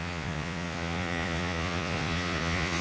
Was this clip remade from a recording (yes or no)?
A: yes